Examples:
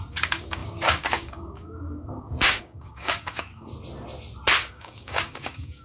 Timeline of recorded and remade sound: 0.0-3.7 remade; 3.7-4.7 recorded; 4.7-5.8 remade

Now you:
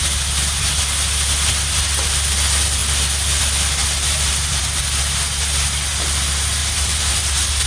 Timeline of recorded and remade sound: 0.0-3.8 recorded; 3.8-4.6 remade; 4.6-6.6 recorded; 6.6-7.2 remade; 7.2-7.7 recorded

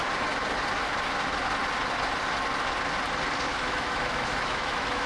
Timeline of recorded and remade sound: 0.0-3.5 recorded; 3.5-5.1 remade

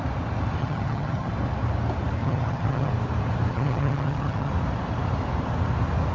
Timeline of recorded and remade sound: 0.0-0.6 recorded; 0.6-1.3 remade; 1.3-2.2 recorded; 2.2-2.9 remade; 2.9-3.5 recorded; 3.5-4.5 remade; 4.5-6.1 recorded

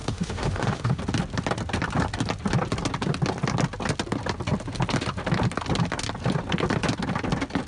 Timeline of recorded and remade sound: 0.0-1.0 remade; 1.0-7.7 recorded

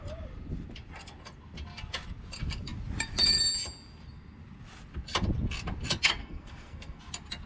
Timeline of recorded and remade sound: 0.0-6.2 recorded; 6.2-7.0 remade; 7.0-7.5 recorded

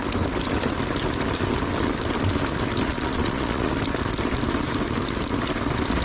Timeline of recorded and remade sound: 0.0-2.9 recorded; 2.9-3.7 remade; 3.7-6.0 recorded